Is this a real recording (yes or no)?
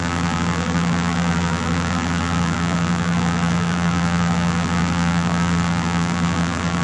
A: no